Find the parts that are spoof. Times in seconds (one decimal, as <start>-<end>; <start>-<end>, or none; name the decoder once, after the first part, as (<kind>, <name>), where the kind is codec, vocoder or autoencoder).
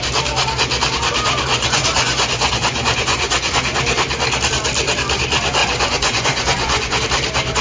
1.5-3.6 (vocoder, Vocos); 5.6-7.0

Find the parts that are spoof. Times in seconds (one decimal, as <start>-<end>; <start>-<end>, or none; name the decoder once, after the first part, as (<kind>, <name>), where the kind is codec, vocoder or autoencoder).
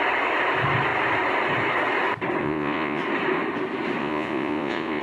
2.4-3.0 (vocoder, Vocos); 4.0-5.0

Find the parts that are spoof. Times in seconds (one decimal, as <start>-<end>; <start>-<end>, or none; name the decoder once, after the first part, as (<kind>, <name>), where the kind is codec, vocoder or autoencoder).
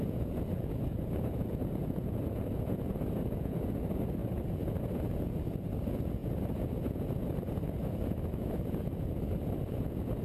0.0-10.2 (vocoder, Vocos)